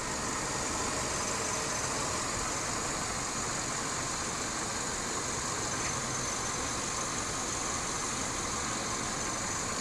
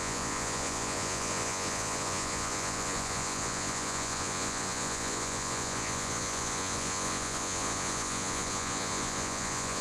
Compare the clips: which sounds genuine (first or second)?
first